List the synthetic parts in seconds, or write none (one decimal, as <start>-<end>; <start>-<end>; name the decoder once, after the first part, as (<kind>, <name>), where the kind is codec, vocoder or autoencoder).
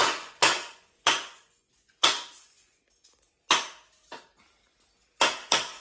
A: 0.0-2.8 (vocoder, Vocos)